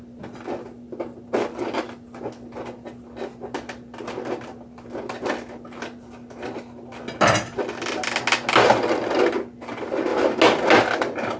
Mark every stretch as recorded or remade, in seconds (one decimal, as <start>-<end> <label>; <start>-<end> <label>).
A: 0.0-11.4 recorded